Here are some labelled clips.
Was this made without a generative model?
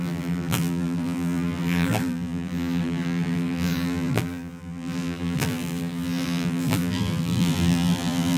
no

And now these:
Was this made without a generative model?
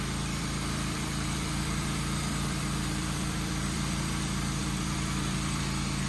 no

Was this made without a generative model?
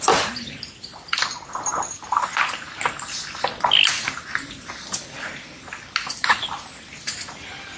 yes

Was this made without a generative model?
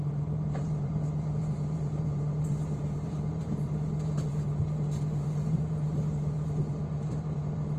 no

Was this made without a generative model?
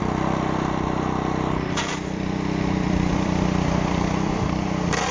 no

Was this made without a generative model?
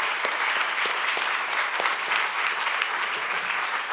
yes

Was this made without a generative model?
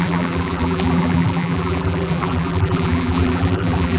no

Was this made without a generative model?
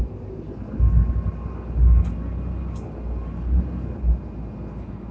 yes